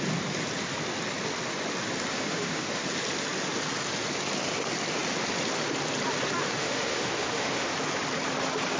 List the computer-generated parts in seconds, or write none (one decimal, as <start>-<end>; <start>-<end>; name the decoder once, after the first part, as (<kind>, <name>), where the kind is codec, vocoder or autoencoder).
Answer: 2.1-2.8 (autoencoder, DAC-VAE); 6.6-7.7